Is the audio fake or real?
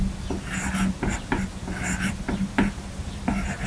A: real